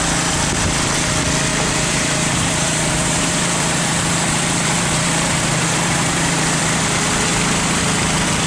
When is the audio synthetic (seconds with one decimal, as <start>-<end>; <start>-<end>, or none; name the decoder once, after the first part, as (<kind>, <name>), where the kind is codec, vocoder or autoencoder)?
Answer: 1.5-6.6 (vocoder, BigVGAN v2); 7.3-7.8